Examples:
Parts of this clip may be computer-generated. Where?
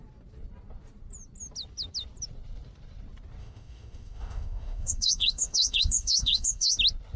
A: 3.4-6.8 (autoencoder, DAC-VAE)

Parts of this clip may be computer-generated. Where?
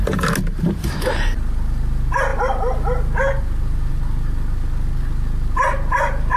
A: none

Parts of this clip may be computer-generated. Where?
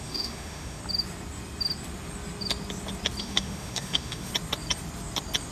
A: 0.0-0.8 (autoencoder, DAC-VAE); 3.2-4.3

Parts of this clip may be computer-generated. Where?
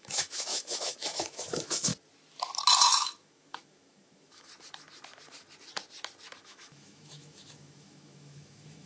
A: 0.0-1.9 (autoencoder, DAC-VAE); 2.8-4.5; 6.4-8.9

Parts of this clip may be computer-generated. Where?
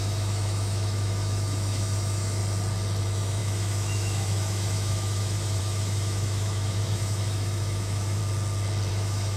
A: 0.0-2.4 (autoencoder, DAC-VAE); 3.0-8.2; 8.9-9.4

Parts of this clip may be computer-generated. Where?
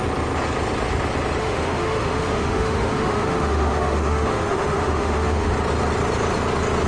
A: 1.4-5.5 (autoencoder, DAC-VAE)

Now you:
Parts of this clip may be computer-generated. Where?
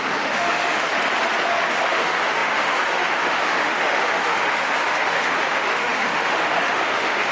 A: 0.0-0.9 (autoencoder, DAC-VAE); 1.5-7.3